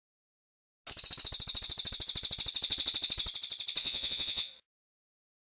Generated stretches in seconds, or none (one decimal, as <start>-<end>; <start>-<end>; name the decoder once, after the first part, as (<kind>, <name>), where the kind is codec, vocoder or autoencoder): 3.8-4.5 (vocoder, Vocos)